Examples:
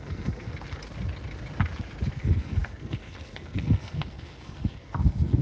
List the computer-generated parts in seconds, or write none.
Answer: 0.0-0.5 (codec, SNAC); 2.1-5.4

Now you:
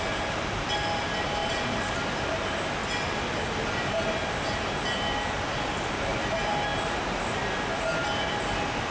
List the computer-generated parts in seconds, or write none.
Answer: 1.4-2.0 (vocoder, BigVGAN v2)

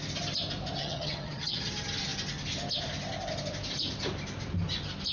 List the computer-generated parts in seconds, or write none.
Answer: 0.8-1.7 (vocoder, HiFi-GAN)

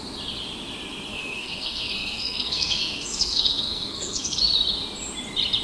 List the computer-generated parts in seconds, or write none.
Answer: 1.1-4.4 (codec, SNAC)